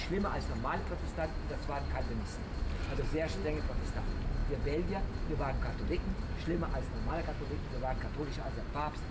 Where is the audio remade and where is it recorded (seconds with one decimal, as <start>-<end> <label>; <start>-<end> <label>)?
0.0-9.1 recorded